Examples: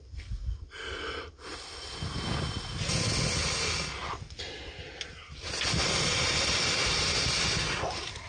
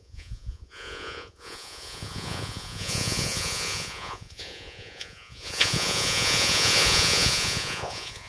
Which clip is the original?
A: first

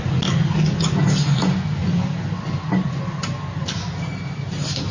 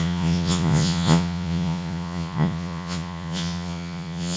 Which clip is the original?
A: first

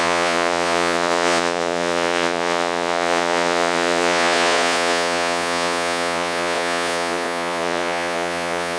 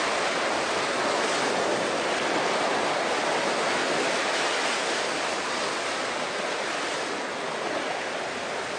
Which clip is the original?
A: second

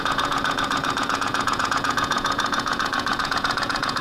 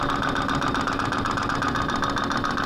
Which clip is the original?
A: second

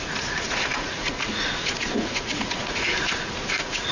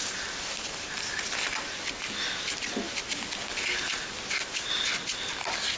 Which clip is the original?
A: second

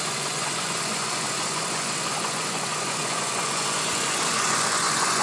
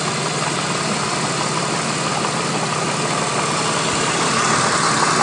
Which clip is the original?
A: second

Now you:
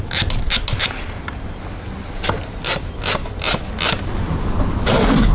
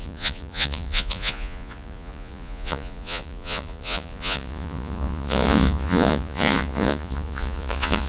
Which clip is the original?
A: first